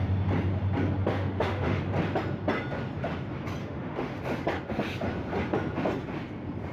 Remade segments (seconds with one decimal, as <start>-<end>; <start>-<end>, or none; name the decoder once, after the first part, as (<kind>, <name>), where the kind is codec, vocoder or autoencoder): 1.1-1.8 (autoencoder, DAC-VAE); 3.6-4.2